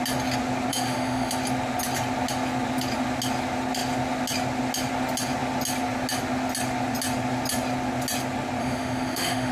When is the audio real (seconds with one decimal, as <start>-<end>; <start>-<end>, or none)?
0.0-0.7; 1.3-8.6